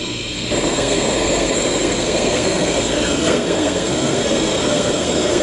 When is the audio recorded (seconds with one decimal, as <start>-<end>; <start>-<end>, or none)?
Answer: none